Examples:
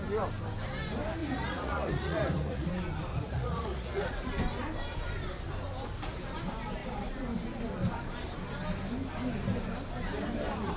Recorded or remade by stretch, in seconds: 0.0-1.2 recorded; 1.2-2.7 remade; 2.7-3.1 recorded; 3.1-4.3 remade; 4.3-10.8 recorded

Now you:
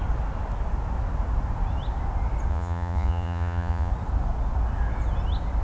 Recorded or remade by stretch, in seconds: 0.0-2.5 recorded; 2.5-3.9 remade; 3.9-5.6 recorded